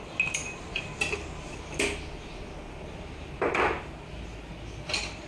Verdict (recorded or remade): recorded